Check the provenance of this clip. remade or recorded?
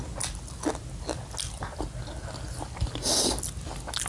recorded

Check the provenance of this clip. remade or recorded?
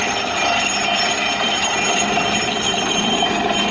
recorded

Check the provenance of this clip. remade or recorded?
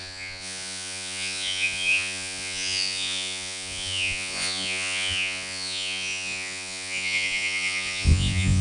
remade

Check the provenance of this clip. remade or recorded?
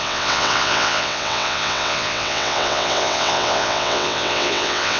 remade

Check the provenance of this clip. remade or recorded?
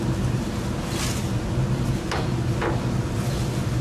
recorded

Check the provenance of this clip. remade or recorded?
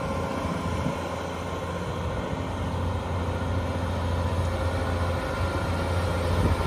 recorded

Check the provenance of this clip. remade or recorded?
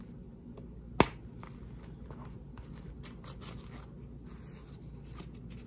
recorded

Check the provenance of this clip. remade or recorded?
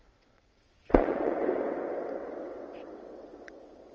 remade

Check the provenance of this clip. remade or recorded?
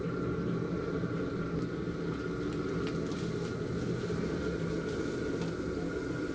recorded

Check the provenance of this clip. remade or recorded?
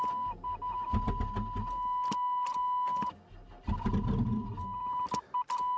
recorded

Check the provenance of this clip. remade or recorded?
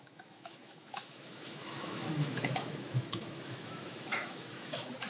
remade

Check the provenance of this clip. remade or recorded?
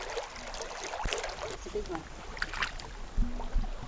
recorded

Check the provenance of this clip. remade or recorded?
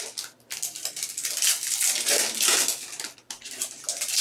recorded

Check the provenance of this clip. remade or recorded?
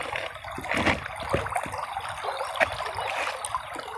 recorded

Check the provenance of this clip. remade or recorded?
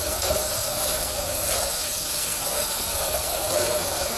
remade